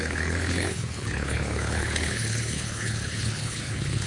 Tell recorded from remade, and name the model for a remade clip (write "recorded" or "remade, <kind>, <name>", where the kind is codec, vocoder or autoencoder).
remade, codec, HILCodec